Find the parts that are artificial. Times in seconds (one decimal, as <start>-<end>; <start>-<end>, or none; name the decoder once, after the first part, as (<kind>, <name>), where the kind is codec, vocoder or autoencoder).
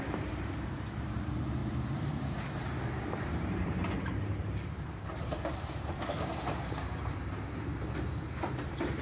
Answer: 0.0-9.0 (vocoder, BigVGAN v2)